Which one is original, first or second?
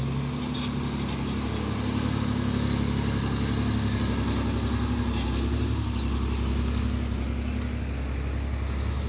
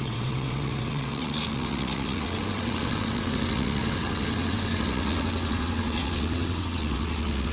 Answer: first